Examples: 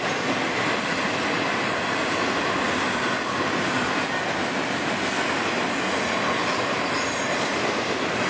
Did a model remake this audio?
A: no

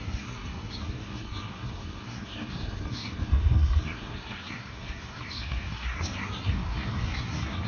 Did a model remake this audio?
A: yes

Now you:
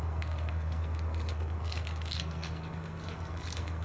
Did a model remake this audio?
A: yes